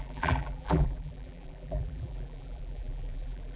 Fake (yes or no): yes